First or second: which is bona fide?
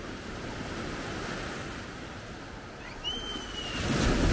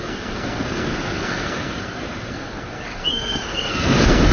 first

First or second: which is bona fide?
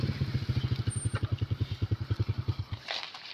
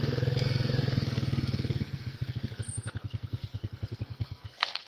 first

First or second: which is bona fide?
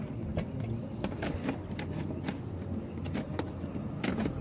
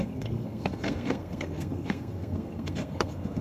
first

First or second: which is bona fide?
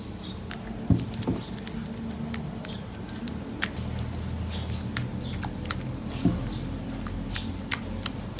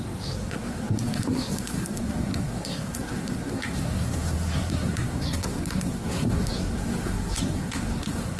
first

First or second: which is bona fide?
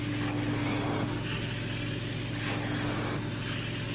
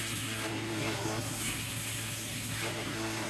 first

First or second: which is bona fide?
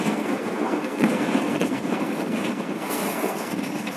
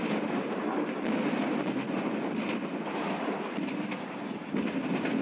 second